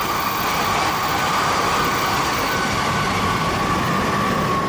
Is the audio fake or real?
fake